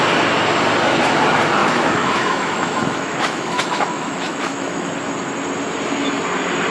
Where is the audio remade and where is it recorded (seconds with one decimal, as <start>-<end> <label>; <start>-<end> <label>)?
0.0-1.6 recorded; 1.6-4.9 remade; 4.9-6.7 recorded